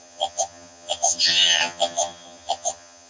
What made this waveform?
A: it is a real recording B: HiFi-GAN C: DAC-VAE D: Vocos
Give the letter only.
B